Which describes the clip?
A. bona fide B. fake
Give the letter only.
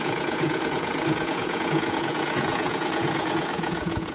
B